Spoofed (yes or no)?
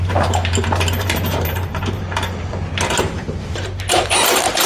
yes